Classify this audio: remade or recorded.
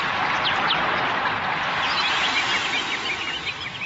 recorded